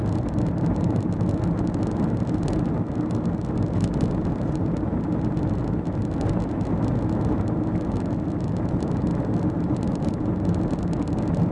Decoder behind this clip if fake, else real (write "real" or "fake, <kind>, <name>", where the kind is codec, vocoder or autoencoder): real